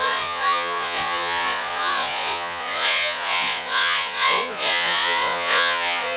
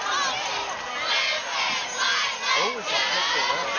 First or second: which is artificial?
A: first